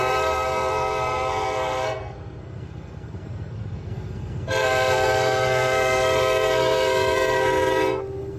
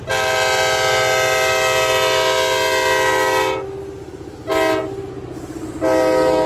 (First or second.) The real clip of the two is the second